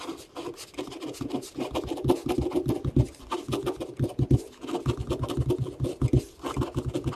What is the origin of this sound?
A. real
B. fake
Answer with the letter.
A